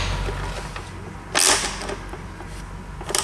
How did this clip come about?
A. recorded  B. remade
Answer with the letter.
A